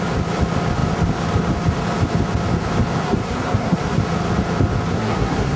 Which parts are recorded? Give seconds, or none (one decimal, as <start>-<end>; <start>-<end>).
0.0-3.0; 4.0-4.9